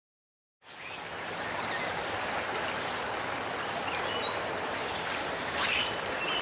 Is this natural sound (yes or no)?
yes